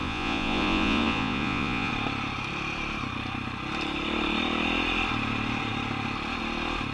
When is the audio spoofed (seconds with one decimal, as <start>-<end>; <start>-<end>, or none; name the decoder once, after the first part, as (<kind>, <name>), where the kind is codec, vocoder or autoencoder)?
0.0-1.9 (vocoder, Vocos)